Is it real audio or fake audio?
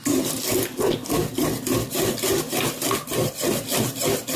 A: real